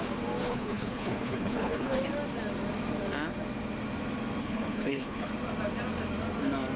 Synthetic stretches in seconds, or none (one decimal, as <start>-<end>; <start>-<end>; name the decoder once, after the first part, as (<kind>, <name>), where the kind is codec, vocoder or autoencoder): 0.4-2.0 (codec, HILCodec); 4.4-5.3